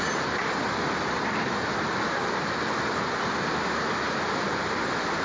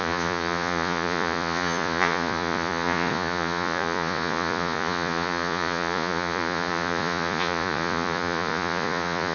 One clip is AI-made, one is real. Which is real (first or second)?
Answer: first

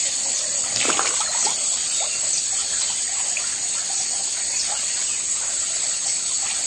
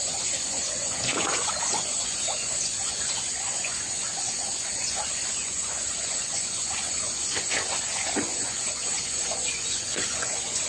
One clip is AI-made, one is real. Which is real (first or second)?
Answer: first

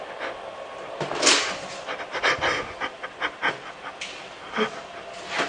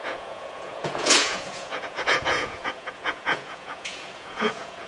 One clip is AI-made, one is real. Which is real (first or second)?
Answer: first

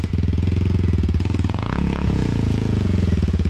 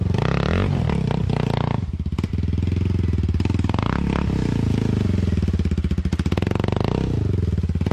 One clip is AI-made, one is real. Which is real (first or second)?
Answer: second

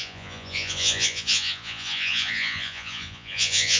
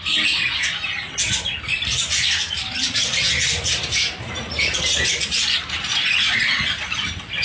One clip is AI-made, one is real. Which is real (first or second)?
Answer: second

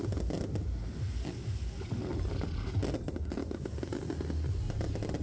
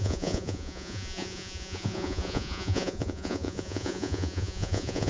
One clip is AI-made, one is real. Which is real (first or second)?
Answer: first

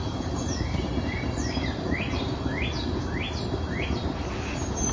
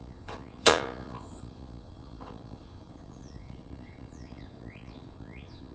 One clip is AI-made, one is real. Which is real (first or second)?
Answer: first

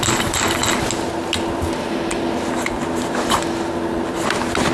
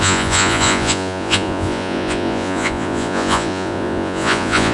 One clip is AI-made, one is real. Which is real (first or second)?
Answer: first